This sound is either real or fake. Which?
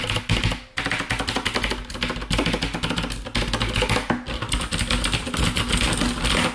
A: real